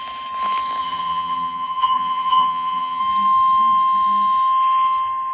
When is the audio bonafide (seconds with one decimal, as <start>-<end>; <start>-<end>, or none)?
0.0-0.8; 3.0-5.3

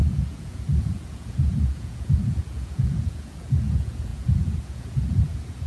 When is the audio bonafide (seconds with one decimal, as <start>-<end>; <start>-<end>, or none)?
none

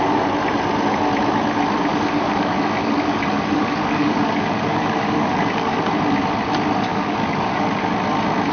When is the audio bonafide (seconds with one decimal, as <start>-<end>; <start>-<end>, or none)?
0.0-1.9; 5.9-6.9; 7.9-8.5

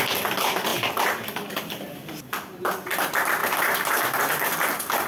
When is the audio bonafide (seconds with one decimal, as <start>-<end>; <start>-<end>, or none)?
0.0-3.4; 4.3-5.1

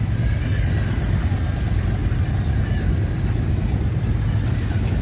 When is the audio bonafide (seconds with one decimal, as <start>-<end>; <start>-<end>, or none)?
0.0-5.0

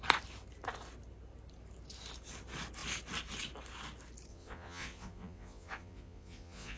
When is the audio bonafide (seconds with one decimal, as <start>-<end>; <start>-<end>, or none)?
0.0-4.3

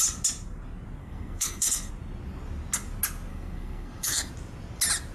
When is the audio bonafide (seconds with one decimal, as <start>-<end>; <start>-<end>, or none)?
0.0-1.0; 1.9-3.3; 4.3-5.1